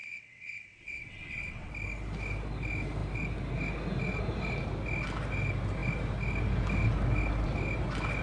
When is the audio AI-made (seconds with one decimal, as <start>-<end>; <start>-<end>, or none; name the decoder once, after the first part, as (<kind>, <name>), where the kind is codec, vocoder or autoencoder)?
0.0-1.7 (vocoder, WaveNeXt)